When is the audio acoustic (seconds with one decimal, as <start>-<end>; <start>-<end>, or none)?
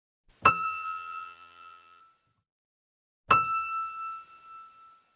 0.0-0.5; 2.0-5.2